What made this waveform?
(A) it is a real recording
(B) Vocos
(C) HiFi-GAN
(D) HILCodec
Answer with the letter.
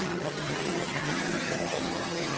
C